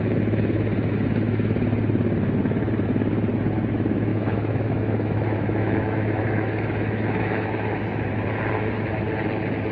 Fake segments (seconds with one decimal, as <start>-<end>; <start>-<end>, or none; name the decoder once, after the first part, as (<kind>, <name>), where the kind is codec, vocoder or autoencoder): 4.1-8.1 (autoencoder, DAC-VAE)